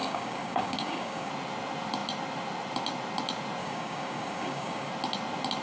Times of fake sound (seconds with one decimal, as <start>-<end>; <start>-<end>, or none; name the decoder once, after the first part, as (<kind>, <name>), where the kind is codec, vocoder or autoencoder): 0.0-1.3 (codec, DAC); 3.6-4.9